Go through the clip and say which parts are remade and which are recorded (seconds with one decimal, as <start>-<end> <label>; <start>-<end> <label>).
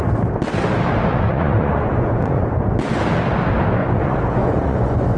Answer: 0.0-1.1 recorded; 1.1-2.7 remade; 2.7-3.8 recorded; 3.8-5.2 remade